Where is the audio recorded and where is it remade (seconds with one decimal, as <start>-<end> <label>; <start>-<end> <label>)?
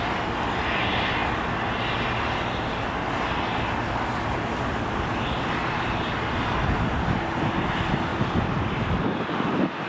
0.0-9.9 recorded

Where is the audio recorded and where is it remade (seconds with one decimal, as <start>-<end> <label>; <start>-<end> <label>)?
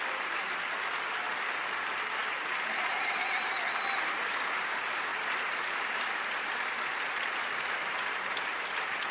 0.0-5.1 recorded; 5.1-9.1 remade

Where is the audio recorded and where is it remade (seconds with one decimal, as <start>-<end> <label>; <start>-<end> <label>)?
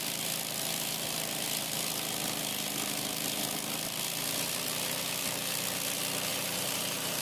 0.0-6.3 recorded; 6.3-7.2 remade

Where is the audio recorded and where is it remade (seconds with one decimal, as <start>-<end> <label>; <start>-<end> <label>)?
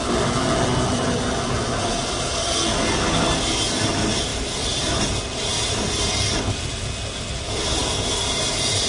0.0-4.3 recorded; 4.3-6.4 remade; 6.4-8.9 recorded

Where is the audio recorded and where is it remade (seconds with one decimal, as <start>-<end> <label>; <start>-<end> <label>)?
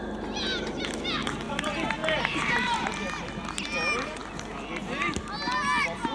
0.0-2.0 recorded; 2.0-2.8 remade; 2.8-6.1 recorded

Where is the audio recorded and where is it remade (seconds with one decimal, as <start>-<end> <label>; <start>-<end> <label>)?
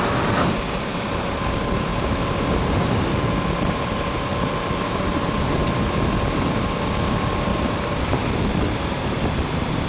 0.0-1.9 recorded; 1.9-3.0 remade; 3.0-4.3 recorded; 4.3-5.1 remade; 5.1-7.5 recorded; 7.5-8.3 remade; 8.3-9.9 recorded